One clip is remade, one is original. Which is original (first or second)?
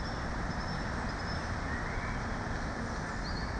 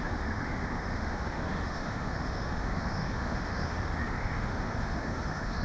first